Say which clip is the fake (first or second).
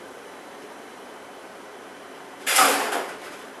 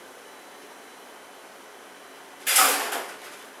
first